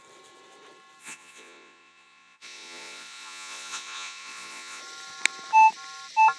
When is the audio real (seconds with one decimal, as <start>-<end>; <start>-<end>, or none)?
0.0-1.0; 4.8-6.4